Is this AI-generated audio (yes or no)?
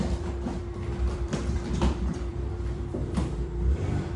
yes